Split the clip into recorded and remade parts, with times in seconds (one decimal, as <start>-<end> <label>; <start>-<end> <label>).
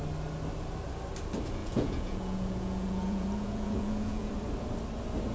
0.0-1.6 recorded; 1.6-4.3 remade; 4.3-5.3 recorded